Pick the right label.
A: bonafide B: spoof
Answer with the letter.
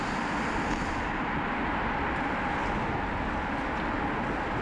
A